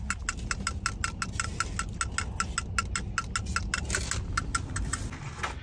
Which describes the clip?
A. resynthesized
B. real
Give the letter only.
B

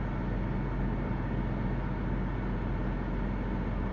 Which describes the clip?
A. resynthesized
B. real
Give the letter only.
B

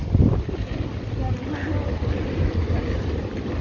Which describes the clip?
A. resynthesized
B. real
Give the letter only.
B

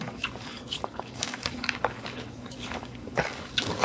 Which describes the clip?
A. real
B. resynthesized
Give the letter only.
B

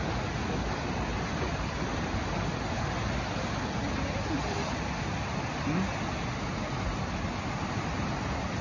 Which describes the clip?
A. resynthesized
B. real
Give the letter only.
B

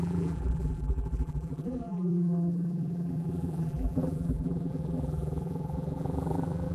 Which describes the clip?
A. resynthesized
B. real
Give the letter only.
A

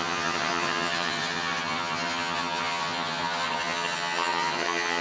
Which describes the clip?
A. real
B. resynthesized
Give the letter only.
B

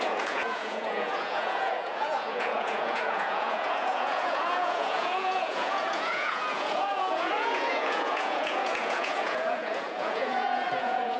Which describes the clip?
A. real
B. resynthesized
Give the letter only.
B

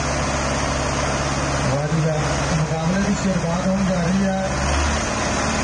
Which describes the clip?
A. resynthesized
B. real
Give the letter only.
B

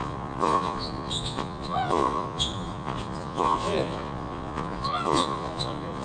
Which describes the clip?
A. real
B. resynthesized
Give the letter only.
B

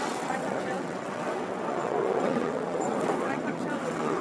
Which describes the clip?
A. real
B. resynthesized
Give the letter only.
B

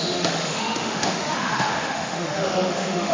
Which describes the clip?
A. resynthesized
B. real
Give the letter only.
A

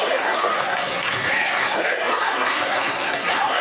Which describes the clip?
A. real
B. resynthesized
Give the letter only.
B